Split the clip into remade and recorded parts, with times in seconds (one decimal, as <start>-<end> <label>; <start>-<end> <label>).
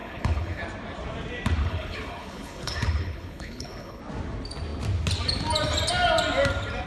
0.0-0.6 remade; 0.6-1.6 recorded; 1.6-4.0 remade; 4.0-6.9 recorded